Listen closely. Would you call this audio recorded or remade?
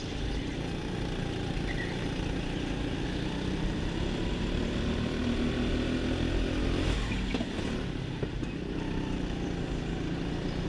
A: recorded